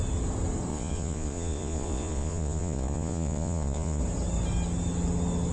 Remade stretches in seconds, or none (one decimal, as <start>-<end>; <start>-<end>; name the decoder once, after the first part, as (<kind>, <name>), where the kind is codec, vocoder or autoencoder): 0.7-4.0 (vocoder, Vocos)